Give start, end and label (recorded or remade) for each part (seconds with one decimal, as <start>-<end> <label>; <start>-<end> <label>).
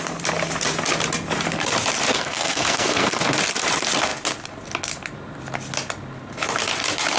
0.0-2.1 recorded; 2.1-3.2 remade; 3.2-7.2 recorded